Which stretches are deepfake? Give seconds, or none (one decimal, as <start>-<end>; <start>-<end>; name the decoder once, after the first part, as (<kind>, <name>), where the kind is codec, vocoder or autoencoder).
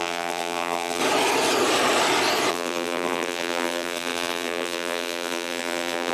0.0-1.0 (vocoder, BigVGAN v2); 2.5-6.1